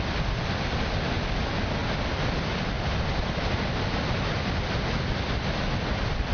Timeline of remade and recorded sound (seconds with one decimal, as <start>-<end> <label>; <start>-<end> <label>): 0.0-6.3 recorded